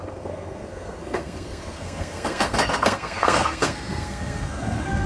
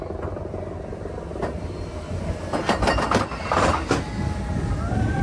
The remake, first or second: first